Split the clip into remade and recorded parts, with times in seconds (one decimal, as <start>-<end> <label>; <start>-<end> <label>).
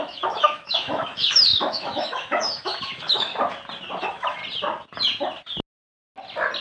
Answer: 0.0-3.3 remade; 3.3-4.0 recorded; 4.0-4.4 remade; 4.4-6.6 recorded